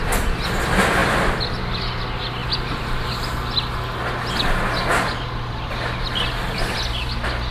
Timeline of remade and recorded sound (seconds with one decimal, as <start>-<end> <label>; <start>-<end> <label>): 0.0-7.5 recorded